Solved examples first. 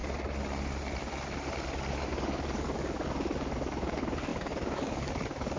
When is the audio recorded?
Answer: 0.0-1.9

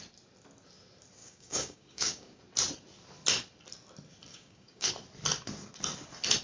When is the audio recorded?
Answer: 0.0-1.2; 2.4-4.3; 4.9-6.4

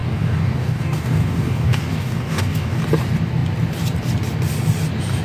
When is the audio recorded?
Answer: 2.8-5.2

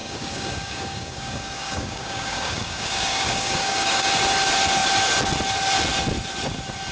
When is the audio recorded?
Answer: 4.1-6.9

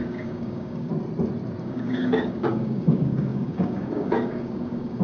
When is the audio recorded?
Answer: 0.9-1.6

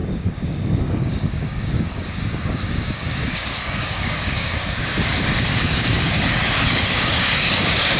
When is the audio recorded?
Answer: none